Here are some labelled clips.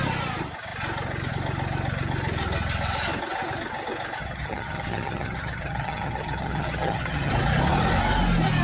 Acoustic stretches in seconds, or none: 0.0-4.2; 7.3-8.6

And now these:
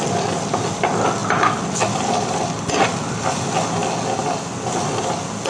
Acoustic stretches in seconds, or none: 0.0-5.5

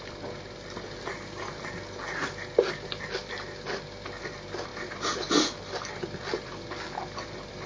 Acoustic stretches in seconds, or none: 0.0-7.7

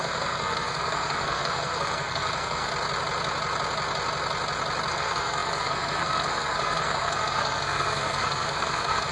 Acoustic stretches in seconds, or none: 2.7-4.9